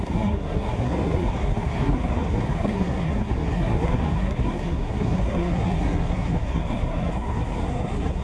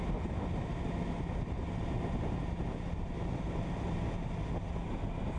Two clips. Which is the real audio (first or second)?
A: second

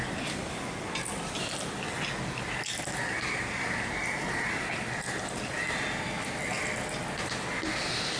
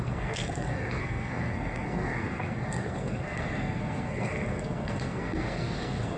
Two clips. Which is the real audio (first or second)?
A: first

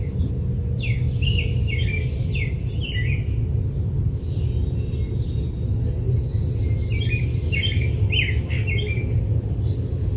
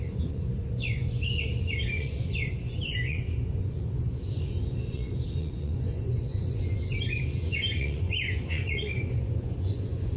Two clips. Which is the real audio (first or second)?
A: first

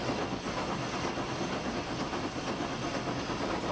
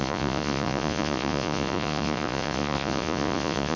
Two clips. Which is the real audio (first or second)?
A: first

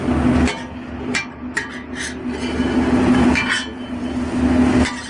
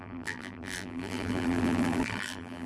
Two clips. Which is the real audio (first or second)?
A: first